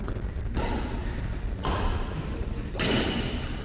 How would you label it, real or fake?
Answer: real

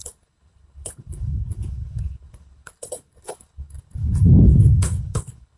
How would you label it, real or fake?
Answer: fake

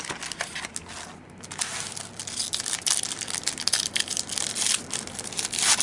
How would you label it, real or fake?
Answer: real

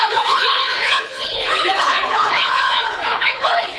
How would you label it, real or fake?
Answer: fake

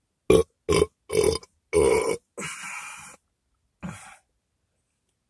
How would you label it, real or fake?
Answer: real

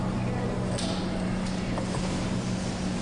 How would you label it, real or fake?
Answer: real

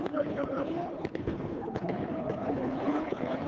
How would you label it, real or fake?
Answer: fake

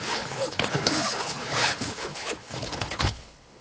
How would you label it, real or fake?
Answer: fake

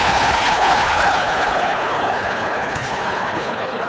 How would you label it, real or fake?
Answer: fake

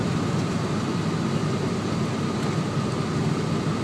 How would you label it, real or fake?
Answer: real